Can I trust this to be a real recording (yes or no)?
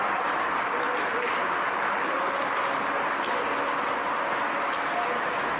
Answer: yes